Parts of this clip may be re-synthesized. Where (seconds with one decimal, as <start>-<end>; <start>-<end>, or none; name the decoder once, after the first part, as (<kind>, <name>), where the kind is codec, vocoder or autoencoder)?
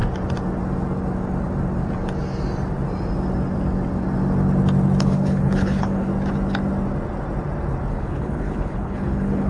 5.0-6.1 (codec, HILCodec); 7.9-9.5